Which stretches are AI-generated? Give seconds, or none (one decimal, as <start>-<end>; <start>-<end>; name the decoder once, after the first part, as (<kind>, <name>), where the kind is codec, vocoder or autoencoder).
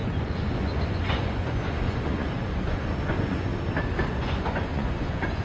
0.0-3.5 (vocoder, Vocos); 4.1-5.4